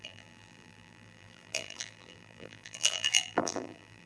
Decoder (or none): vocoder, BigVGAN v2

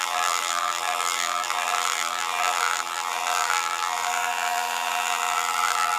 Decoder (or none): vocoder, BigVGAN v2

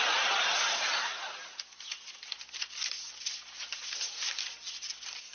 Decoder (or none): none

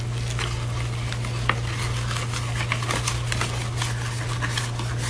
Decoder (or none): none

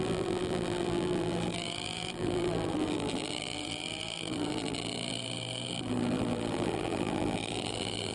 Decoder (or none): vocoder, BigVGAN v2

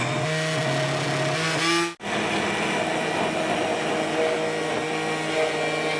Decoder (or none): none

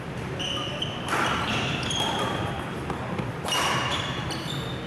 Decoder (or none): vocoder, BigVGAN v2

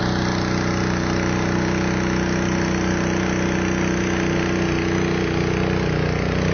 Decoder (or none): none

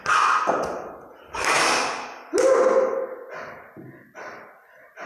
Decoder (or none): none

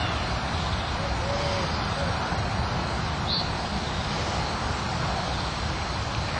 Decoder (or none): none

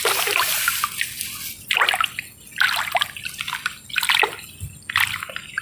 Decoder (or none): none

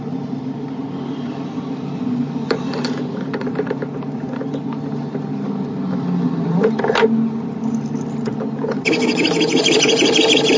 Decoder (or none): none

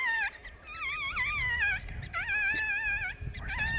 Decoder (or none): none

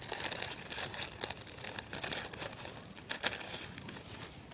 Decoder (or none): vocoder, BigVGAN v2